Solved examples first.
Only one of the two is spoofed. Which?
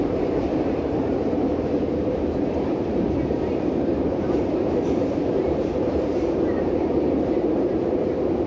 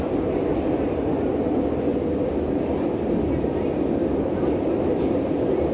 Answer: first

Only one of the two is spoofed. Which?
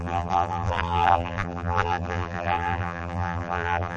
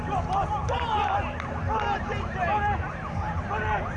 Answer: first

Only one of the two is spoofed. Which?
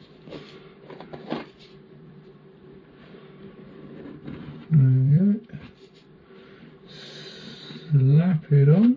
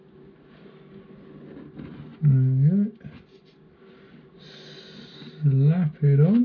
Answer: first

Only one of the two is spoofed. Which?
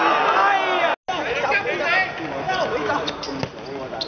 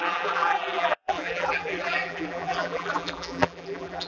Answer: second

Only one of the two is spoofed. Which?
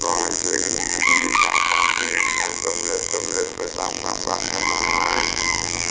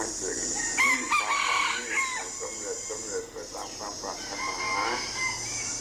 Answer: first